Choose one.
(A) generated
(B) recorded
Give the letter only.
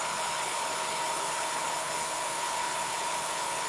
A